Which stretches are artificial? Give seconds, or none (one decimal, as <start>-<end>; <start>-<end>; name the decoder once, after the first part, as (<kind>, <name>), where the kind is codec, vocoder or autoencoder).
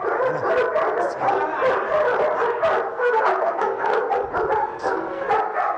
2.9-4.1 (codec, SNAC); 4.6-5.3